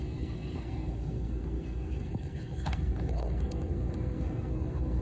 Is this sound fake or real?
fake